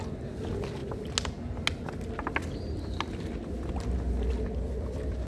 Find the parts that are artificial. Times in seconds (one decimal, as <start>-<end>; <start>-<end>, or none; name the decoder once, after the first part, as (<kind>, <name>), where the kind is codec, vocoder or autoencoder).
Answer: none